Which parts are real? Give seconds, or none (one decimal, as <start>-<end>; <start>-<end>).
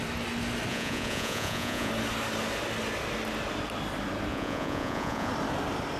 0.0-0.7; 1.9-4.3; 5.3-6.0